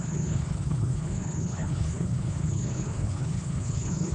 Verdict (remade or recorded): remade